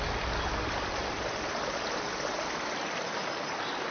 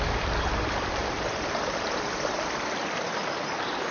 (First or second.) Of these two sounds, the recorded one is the first